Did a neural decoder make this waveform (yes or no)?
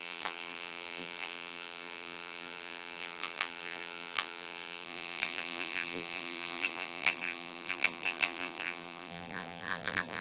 yes